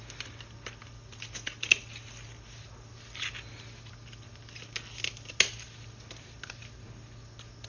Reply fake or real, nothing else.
real